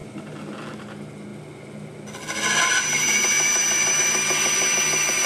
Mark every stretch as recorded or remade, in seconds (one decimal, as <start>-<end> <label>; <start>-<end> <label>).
0.0-5.3 recorded

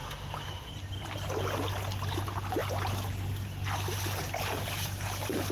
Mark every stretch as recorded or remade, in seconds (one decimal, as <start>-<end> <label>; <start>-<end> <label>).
0.0-0.7 remade; 0.7-5.5 recorded

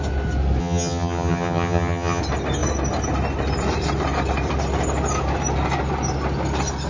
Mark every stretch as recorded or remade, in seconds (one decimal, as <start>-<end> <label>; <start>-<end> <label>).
0.0-0.6 recorded; 0.6-2.2 remade; 2.2-6.9 recorded

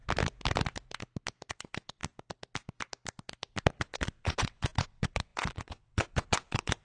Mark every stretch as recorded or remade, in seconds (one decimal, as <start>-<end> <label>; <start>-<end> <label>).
0.0-1.5 recorded; 1.5-2.0 remade; 2.0-3.7 recorded; 3.7-6.8 remade

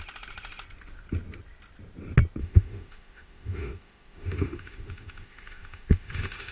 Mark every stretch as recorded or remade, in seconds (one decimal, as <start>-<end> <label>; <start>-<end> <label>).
0.0-2.4 recorded; 2.4-6.5 remade